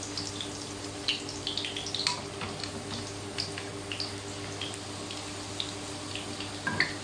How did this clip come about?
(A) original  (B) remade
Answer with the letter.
A